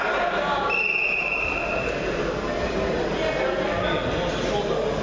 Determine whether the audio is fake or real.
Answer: real